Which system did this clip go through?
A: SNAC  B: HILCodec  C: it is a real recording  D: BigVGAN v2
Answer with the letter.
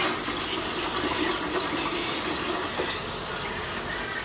C